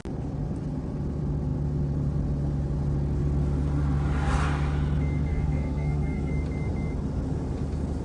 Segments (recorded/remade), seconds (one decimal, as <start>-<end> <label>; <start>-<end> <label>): 0.0-5.3 recorded; 5.3-6.3 remade; 6.3-8.0 recorded